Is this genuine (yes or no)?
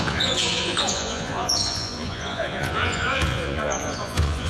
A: no